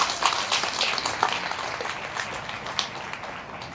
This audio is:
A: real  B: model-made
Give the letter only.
A